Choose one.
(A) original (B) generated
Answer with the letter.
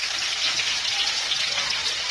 B